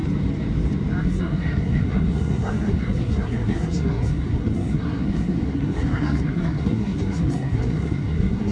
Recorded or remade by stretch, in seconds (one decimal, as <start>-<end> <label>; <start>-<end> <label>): 0.0-1.0 recorded; 1.0-8.5 remade

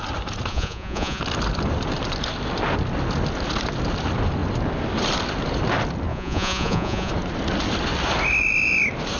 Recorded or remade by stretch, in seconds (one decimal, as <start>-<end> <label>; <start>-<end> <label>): 0.0-0.5 recorded; 0.5-1.2 remade; 1.2-6.1 recorded; 6.1-7.1 remade; 7.1-9.2 recorded

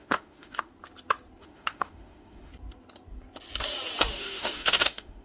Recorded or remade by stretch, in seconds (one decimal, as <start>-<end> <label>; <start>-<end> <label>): 0.0-0.7 remade; 0.7-1.4 recorded; 1.4-2.5 remade; 2.5-4.1 recorded; 4.1-5.2 remade